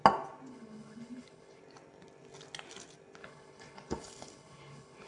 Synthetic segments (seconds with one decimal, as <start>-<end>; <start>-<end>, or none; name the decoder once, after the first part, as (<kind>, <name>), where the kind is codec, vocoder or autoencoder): 0.5-1.6 (codec, HILCodec); 3.2-5.1